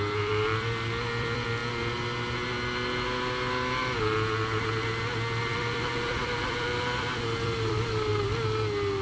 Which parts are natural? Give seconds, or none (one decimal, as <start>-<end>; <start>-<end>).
1.6-5.5; 8.1-9.0